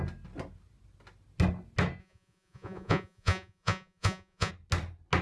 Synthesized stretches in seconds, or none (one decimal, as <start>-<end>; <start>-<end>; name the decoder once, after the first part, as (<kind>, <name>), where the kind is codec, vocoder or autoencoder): 2.0-4.5 (vocoder, Vocos)